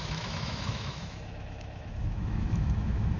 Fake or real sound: fake